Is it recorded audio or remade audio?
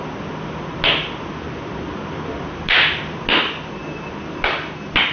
recorded